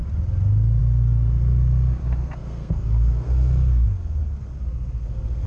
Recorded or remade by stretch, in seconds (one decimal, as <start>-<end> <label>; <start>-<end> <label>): 0.0-2.0 recorded; 2.0-5.5 remade